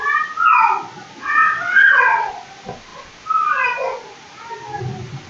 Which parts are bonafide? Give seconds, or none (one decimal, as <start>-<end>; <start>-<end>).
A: 0.0-1.2; 2.3-5.3

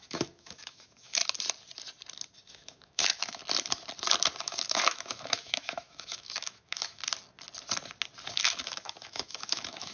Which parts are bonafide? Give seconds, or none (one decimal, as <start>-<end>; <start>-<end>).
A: 1.2-2.5; 3.4-4.4; 7.0-8.4

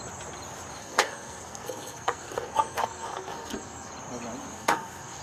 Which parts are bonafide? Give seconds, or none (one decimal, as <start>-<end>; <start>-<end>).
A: 0.0-0.8; 3.9-4.5

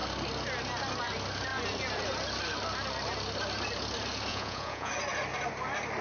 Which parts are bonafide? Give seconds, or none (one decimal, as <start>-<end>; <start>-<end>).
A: 0.0-4.3; 4.9-6.0

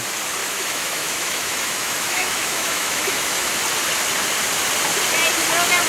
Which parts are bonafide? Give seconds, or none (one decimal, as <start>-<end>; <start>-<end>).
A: 0.0-0.4; 3.5-5.9

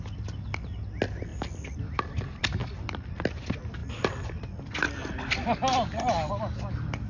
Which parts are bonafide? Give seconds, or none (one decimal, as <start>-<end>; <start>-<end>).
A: 0.0-1.3; 2.0-2.6; 3.1-3.8; 6.3-7.1